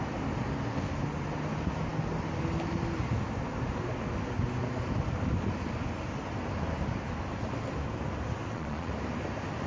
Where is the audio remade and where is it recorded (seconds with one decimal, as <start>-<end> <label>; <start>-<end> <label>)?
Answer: 0.0-8.4 recorded; 8.4-8.9 remade; 8.9-9.7 recorded